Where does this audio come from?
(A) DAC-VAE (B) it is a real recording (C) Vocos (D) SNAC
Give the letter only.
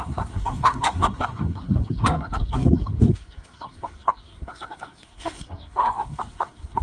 D